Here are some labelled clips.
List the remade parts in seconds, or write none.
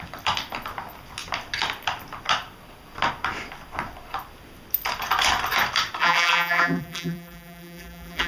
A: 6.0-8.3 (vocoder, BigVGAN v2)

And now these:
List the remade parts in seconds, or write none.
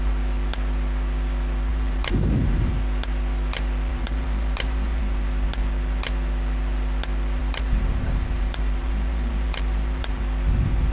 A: 1.7-2.7 (vocoder, BigVGAN v2); 3.9-5.0; 7.4-10.2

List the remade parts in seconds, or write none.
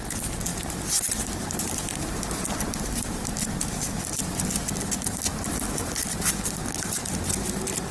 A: 0.5-4.6 (vocoder, BigVGAN v2); 5.3-7.0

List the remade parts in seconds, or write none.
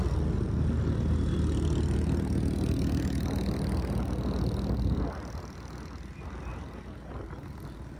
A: 6.5-7.1 (vocoder, BigVGAN v2)